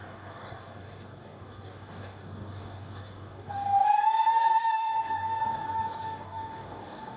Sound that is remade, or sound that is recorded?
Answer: remade